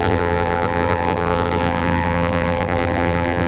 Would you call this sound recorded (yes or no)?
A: no